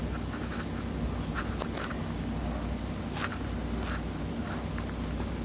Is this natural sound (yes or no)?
yes